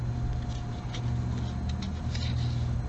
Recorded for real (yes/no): yes